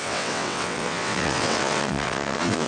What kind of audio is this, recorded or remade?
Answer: remade